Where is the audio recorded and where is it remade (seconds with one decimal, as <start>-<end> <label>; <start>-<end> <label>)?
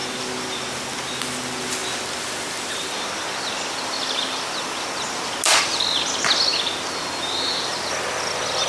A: 0.0-8.7 recorded